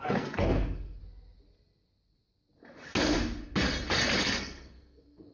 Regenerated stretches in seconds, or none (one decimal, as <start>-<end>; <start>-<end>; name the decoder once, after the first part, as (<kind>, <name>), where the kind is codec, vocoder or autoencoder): 0.0-1.0 (codec, SNAC); 4.2-5.3